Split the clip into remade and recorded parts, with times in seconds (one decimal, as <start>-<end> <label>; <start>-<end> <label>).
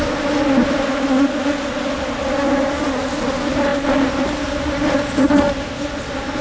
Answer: 0.0-6.4 recorded